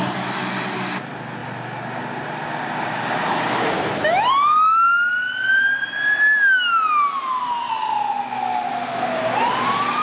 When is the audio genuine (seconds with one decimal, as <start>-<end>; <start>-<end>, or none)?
0.0-10.0